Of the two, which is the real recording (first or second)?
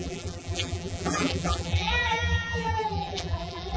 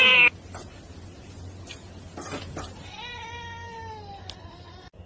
second